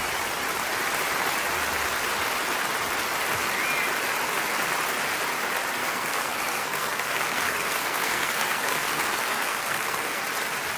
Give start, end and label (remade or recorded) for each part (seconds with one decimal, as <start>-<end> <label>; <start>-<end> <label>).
0.0-5.8 recorded; 5.8-10.2 remade; 10.2-10.8 recorded